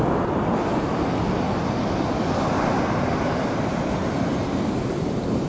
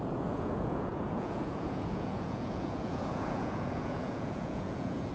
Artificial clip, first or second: second